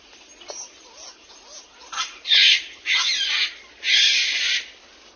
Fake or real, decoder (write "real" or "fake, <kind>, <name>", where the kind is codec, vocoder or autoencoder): real